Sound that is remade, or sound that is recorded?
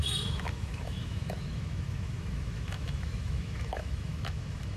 remade